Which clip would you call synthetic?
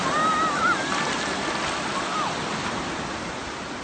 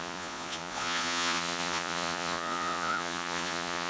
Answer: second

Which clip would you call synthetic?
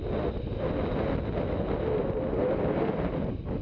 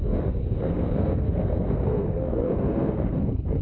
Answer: second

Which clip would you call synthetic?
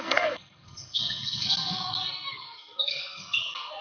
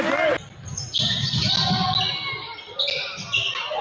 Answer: first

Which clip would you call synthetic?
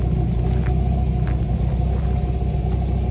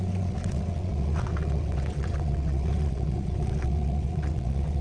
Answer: second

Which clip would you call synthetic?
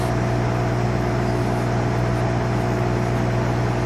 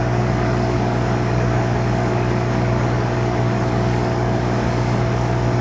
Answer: second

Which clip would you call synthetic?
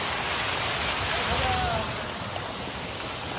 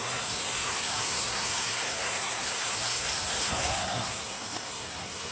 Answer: second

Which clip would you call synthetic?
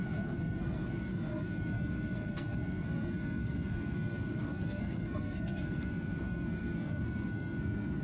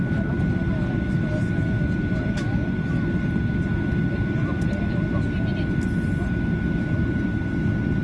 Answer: first